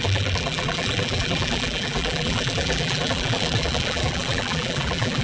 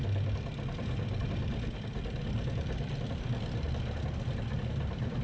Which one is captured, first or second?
second